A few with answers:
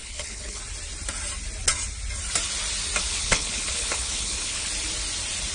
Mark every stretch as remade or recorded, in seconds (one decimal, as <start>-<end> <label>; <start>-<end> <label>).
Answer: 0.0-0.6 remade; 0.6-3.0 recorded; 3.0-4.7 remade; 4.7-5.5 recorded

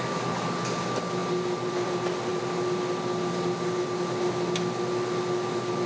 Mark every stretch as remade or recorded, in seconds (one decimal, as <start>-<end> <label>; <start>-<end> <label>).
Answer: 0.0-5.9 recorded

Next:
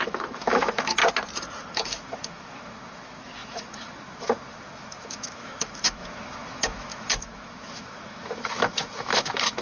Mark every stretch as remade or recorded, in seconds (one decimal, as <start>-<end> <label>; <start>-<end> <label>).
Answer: 0.0-1.0 remade; 1.0-1.7 recorded; 1.7-9.6 remade

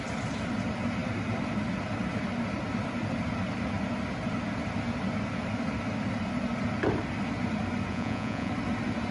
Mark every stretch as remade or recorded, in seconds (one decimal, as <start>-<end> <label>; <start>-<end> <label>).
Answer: 0.0-7.9 recorded; 7.9-8.5 remade; 8.5-9.1 recorded

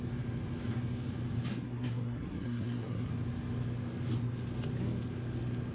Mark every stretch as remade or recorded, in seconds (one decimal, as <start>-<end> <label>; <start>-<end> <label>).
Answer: 0.0-1.5 recorded; 1.5-3.1 remade; 3.1-5.7 recorded

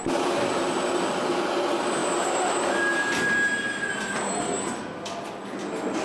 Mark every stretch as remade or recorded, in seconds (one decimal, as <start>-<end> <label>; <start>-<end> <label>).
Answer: 0.0-6.0 recorded